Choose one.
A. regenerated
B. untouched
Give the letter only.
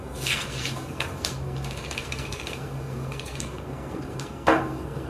A